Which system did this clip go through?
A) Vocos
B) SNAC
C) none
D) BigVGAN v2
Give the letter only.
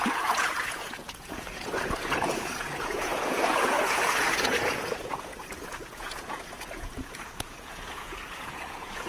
A